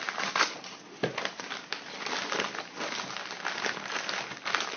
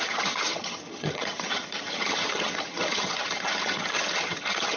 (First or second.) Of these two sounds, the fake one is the second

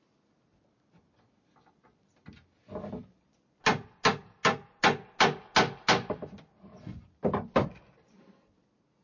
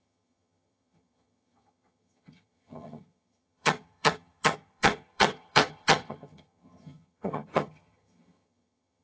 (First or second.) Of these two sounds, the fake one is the second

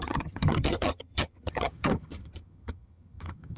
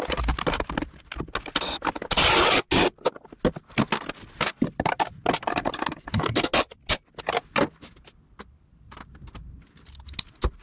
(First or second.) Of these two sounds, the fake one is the first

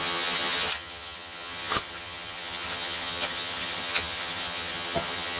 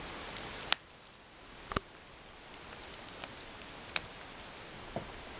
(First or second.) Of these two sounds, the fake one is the first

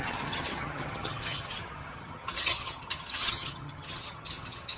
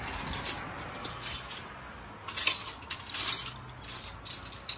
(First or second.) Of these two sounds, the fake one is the first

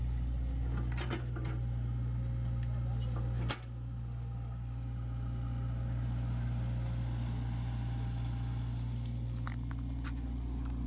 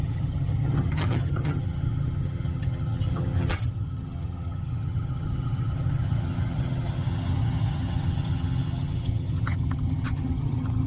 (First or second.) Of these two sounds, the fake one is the second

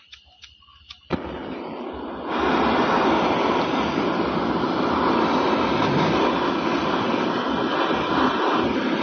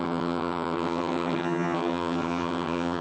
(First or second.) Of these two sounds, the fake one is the second